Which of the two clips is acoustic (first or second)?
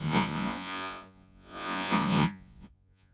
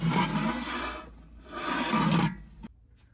second